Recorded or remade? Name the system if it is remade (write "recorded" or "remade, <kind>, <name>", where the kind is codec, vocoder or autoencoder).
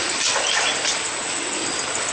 recorded